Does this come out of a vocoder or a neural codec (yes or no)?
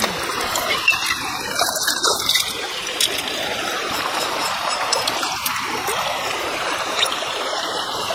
yes